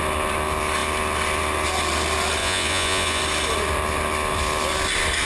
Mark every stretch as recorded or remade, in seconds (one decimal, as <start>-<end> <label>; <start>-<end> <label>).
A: 0.0-2.4 recorded; 2.4-3.2 remade; 3.2-5.3 recorded